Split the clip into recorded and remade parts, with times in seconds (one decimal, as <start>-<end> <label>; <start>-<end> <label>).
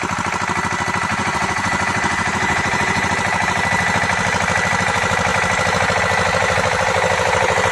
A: 0.0-1.1 recorded; 1.1-3.1 remade; 3.1-7.7 recorded